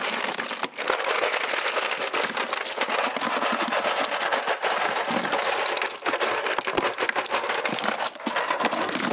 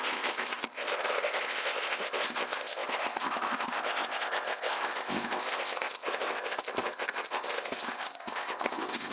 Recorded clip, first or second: first